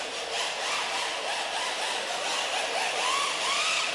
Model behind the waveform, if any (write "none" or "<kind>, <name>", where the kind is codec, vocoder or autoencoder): none